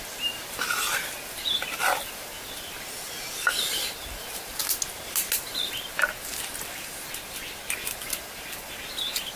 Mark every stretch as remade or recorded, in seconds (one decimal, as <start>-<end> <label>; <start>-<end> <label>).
0.0-9.4 recorded